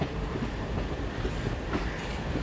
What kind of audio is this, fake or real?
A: fake